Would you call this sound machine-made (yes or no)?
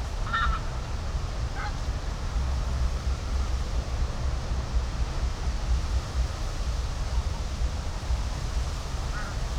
no